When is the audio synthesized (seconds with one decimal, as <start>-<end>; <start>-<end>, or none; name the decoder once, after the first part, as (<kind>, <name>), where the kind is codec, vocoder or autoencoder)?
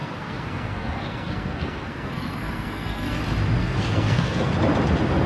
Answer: 0.0-3.2 (codec, SNAC); 3.6-4.5